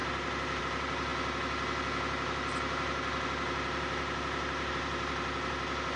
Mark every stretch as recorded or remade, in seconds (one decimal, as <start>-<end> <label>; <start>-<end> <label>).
0.0-6.0 recorded